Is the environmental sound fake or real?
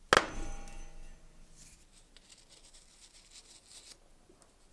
real